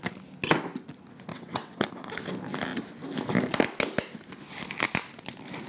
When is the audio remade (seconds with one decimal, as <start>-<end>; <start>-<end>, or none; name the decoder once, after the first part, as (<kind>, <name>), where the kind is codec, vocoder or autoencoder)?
1.3-1.9 (vocoder, WaveNeXt)